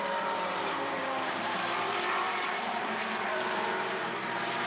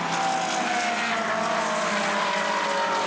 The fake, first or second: first